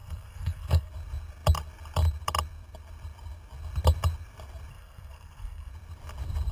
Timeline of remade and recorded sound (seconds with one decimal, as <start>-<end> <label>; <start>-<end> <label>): 0.0-0.9 remade; 0.9-4.7 recorded; 4.7-5.7 remade; 5.7-6.5 recorded